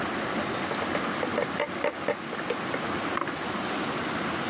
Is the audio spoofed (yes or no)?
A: no